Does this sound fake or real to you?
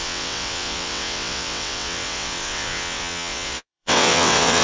fake